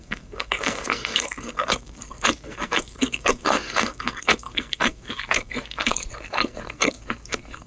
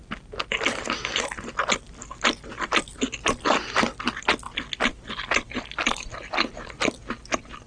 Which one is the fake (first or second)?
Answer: first